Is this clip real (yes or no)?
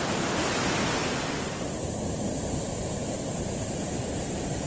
no